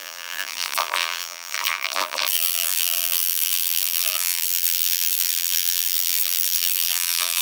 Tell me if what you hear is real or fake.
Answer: fake